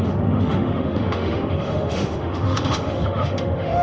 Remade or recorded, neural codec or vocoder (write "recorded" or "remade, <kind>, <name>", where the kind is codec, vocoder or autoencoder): remade, autoencoder, DAC-VAE